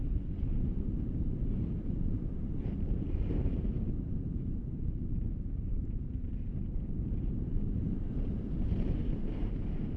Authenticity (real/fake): fake